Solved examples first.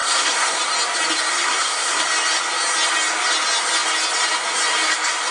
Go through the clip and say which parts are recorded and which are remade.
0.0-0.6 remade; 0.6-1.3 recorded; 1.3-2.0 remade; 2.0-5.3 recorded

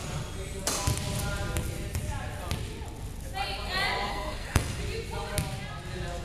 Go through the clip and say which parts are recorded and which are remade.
0.0-4.1 recorded; 4.1-4.8 remade; 4.8-6.2 recorded

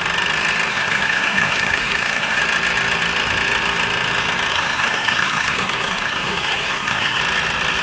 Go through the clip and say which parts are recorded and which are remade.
0.0-0.7 recorded; 0.7-2.4 remade; 2.4-4.5 recorded; 4.5-7.2 remade; 7.2-7.8 recorded

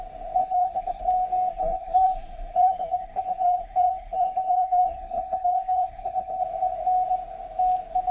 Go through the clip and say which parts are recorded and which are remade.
0.0-0.4 recorded; 0.4-1.0 remade; 1.0-1.5 recorded; 1.5-6.4 remade; 6.4-8.1 recorded